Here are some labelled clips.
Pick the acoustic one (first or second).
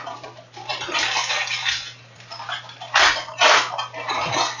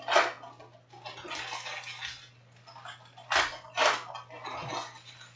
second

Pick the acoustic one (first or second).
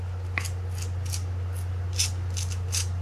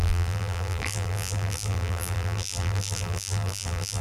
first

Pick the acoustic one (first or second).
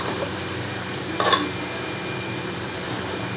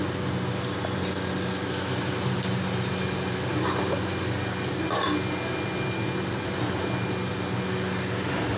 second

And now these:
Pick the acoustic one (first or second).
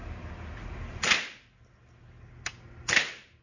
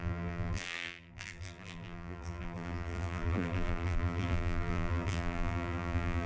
first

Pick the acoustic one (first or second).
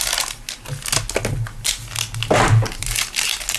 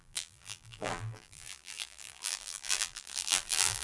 first